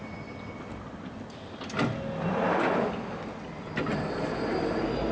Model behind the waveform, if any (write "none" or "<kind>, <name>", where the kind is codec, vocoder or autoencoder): none